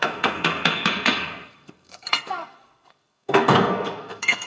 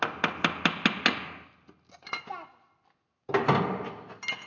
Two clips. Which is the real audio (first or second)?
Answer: second